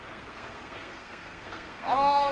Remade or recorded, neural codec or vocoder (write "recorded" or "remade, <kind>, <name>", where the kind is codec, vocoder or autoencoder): remade, codec, SNAC